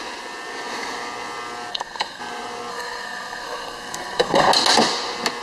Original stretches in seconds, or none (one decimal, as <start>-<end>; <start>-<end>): 0.0-1.7; 2.2-2.7; 4.5-5.4